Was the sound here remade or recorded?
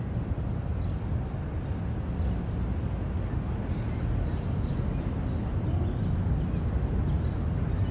recorded